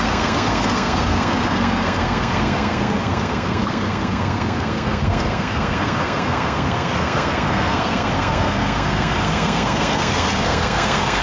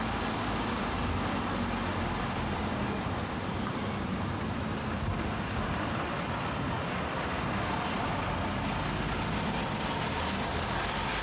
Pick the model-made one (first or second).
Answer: first